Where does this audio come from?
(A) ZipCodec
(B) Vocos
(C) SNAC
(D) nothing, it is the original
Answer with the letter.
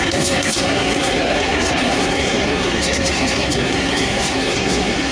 C